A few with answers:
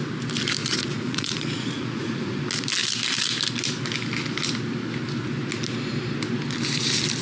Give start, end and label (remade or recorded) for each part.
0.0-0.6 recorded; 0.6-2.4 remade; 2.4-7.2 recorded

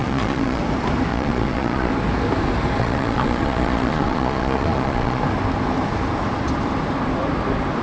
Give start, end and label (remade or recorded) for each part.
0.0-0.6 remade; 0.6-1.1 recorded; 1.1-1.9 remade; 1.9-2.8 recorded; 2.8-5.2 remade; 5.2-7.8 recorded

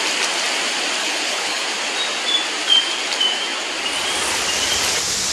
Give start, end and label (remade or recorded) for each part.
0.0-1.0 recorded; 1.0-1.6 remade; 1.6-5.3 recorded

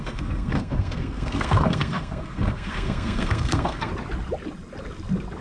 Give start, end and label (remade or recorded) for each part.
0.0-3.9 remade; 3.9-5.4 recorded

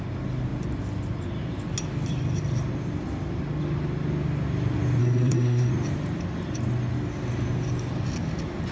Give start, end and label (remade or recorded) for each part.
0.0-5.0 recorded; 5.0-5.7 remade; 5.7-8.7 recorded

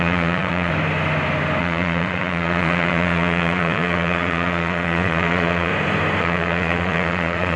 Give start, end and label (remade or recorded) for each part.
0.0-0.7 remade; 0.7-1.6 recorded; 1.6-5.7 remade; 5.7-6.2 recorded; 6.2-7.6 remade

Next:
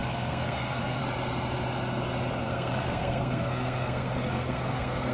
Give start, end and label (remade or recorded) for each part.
0.0-1.0 remade; 1.0-2.4 recorded; 2.4-5.1 remade

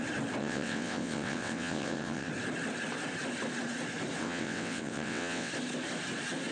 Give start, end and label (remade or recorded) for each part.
0.0-0.4 recorded; 0.4-2.3 remade; 2.3-4.2 recorded; 4.2-5.5 remade; 5.5-6.5 recorded